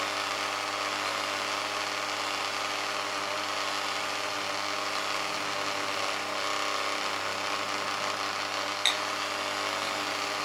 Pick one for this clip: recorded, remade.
recorded